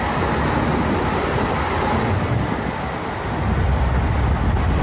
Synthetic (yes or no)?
no